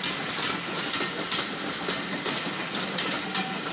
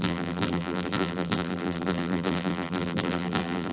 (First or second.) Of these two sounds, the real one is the first